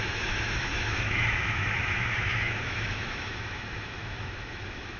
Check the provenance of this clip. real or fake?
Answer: fake